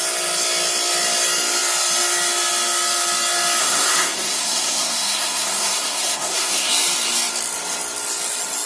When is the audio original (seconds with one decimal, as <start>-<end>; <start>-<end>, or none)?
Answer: 0.0-3.6; 6.7-8.7